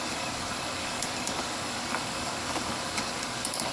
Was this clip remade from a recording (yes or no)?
yes